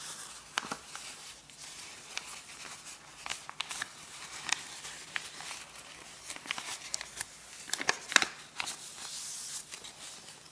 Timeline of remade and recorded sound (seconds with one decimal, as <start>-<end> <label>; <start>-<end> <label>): 0.0-10.5 recorded

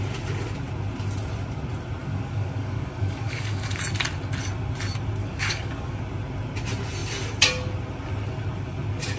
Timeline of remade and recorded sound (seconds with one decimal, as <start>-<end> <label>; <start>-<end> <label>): 0.0-2.0 recorded; 2.0-3.8 remade; 3.8-5.2 recorded; 5.2-6.0 remade; 6.0-9.2 recorded